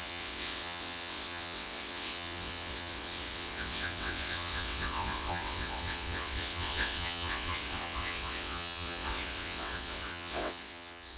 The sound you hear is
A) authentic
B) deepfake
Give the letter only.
B